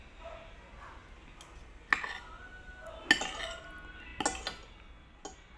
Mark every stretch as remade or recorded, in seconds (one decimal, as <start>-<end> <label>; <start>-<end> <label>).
0.0-5.6 recorded

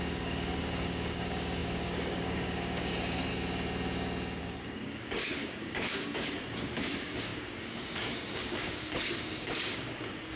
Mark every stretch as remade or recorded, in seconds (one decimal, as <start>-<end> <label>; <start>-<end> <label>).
0.0-3.3 remade; 3.3-4.4 recorded; 4.4-10.4 remade

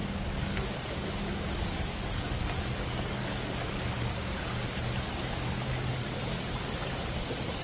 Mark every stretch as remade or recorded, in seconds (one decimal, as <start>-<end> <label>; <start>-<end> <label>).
0.0-4.4 remade; 4.4-5.1 recorded; 5.1-6.2 remade; 6.2-7.6 recorded

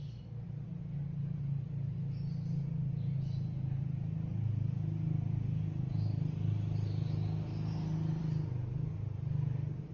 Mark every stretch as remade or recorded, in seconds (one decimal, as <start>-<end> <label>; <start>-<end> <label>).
0.0-9.9 recorded